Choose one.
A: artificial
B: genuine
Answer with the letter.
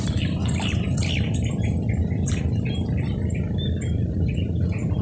A